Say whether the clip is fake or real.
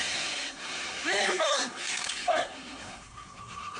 fake